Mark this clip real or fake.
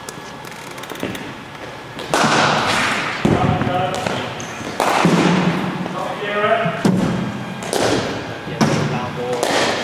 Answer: real